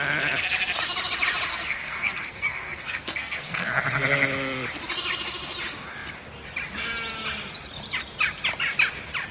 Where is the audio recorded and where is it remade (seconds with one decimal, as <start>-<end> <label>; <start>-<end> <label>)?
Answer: 0.0-1.5 recorded; 1.5-3.8 remade; 3.8-9.3 recorded